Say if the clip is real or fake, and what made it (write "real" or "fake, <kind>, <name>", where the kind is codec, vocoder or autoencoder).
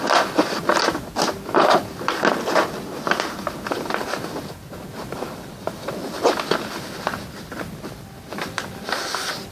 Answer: real